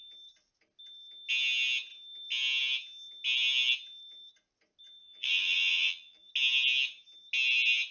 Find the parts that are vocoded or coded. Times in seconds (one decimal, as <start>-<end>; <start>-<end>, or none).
5.0-6.3